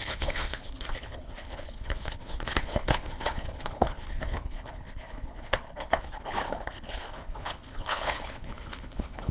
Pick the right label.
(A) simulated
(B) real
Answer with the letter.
A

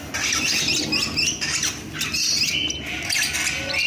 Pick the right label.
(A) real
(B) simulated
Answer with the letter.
A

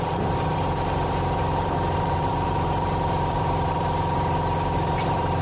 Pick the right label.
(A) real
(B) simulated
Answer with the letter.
B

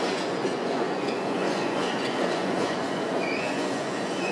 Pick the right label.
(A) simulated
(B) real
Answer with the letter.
A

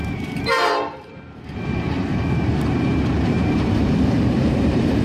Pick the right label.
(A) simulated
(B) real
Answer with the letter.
A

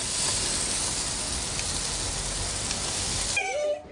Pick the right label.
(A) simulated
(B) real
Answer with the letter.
B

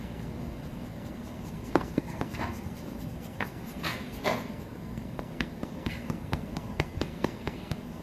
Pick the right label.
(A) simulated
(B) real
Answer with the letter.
A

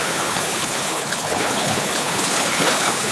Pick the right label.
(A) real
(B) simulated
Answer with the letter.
B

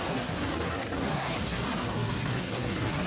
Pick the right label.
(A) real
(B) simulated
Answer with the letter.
B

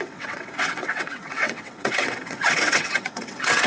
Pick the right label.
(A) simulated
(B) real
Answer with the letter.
A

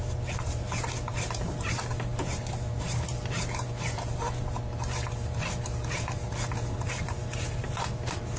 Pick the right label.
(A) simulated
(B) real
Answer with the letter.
A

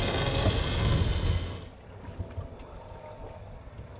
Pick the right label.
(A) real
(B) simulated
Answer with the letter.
A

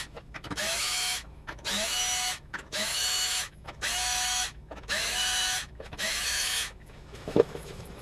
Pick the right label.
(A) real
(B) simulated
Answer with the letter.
B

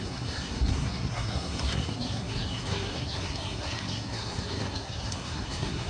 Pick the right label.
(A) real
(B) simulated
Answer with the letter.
B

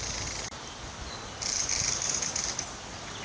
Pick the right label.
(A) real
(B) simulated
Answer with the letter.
B